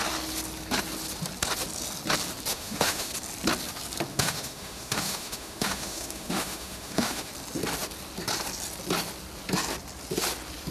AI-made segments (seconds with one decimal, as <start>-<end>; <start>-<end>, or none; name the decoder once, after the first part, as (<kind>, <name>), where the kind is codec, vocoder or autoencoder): 2.5-3.1 (autoencoder, DAC-VAE); 4.1-7.3